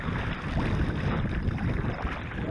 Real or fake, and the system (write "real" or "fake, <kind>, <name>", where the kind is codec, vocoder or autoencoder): real